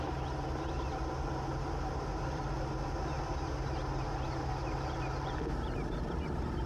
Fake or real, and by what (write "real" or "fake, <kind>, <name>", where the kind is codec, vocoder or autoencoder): real